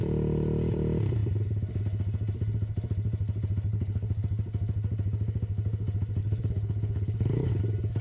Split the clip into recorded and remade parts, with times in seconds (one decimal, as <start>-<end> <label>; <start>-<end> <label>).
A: 0.0-3.7 recorded; 3.7-4.2 remade; 4.2-6.2 recorded; 6.2-7.5 remade; 7.5-8.0 recorded